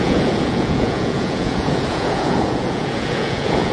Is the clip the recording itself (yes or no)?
no